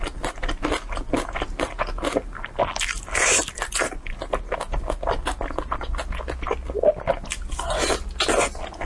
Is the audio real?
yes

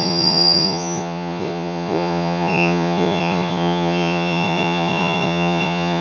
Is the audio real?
no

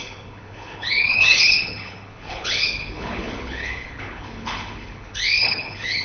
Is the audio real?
no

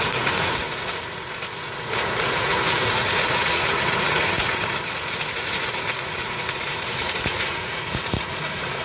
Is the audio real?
no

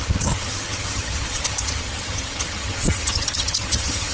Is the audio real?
no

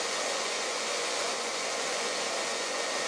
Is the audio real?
no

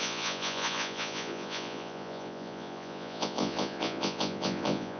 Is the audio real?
no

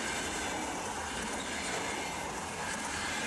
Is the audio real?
yes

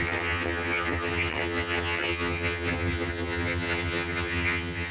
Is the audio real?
no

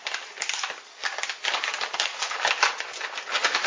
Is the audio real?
yes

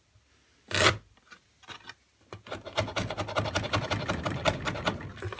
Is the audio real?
yes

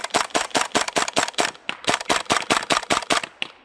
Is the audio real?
yes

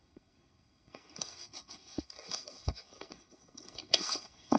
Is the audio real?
no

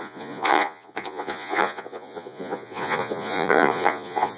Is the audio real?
no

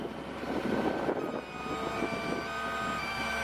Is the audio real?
yes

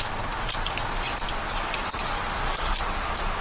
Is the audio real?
yes